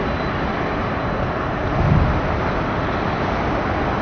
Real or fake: real